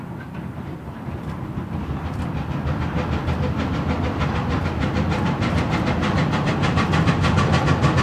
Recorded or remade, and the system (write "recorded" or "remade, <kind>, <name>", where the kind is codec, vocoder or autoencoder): recorded